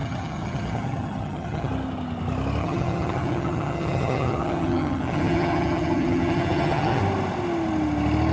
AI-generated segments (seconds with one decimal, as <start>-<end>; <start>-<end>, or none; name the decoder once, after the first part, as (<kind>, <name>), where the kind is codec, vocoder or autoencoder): 0.0-1.7 (vocoder, HiFi-GAN); 2.6-7.0